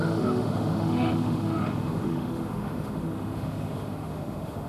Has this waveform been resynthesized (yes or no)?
yes